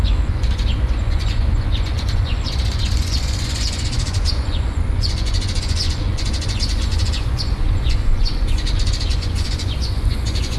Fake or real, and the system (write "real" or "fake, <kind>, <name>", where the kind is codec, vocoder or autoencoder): fake, vocoder, Vocos